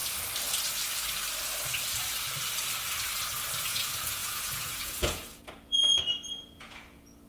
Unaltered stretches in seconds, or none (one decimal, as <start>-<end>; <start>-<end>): 0.0-3.7